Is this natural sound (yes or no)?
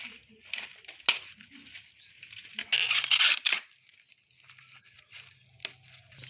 yes